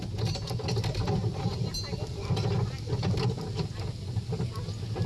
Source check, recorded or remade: recorded